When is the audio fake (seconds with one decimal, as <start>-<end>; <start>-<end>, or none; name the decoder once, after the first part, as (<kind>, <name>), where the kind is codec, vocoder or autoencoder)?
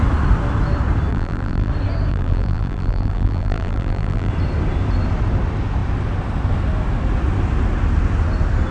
1.1-1.7 (vocoder, BigVGAN v2); 2.1-4.3